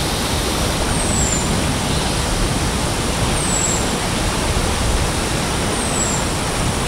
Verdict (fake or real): real